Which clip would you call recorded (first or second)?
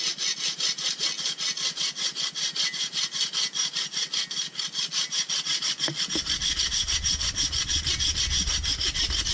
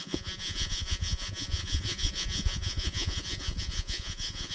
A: first